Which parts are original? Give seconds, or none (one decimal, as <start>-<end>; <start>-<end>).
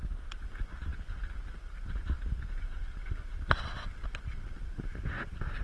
0.0-5.6